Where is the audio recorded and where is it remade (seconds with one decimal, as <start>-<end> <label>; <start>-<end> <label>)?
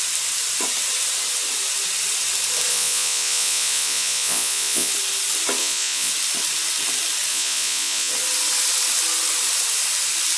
0.0-2.7 recorded; 2.7-4.9 remade; 4.9-5.6 recorded; 5.6-6.1 remade; 6.1-7.3 recorded; 7.3-8.1 remade; 8.1-10.4 recorded